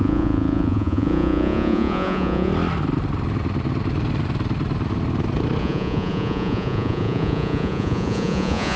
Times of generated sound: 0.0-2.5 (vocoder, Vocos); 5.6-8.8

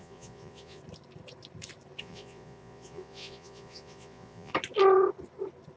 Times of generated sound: 0.0-0.8 (vocoder, Vocos); 2.0-4.5

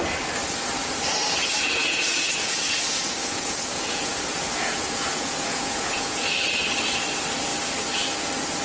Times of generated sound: 1.8-6.2 (vocoder, Vocos)

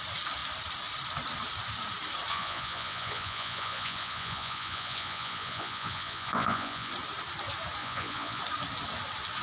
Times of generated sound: 2.3-6.9 (vocoder, Vocos); 7.8-8.4